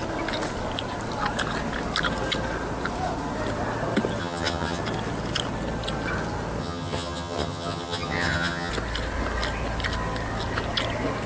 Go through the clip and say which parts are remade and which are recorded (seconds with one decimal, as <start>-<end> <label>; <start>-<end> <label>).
0.0-4.2 recorded; 4.2-4.8 remade; 4.8-6.6 recorded; 6.6-8.7 remade; 8.7-11.3 recorded